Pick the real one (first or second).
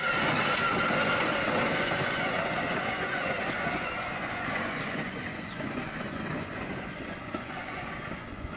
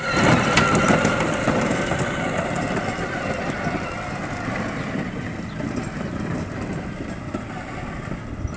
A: second